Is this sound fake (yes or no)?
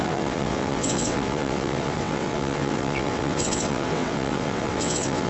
yes